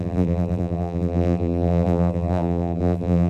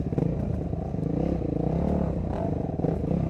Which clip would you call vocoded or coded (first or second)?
first